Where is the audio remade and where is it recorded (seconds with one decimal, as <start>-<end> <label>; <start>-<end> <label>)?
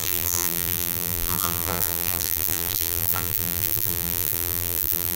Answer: 0.0-5.2 remade